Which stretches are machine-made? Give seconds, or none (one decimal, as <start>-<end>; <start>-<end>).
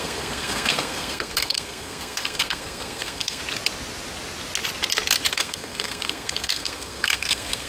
0.0-3.4; 5.3-7.7